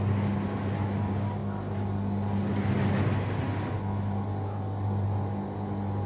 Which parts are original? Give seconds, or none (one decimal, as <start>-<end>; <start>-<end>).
0.0-6.1